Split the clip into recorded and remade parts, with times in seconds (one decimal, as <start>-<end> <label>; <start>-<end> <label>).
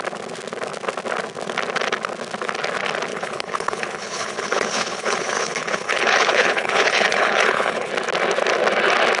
0.0-3.1 recorded; 3.1-7.9 remade; 7.9-9.2 recorded